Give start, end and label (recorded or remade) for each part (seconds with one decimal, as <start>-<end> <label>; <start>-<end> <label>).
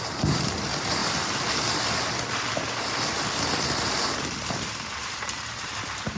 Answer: 0.0-1.0 remade; 1.0-4.7 recorded; 4.7-6.2 remade